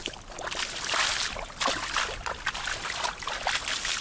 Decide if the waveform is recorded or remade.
recorded